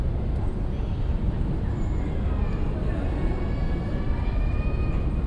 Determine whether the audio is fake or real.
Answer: real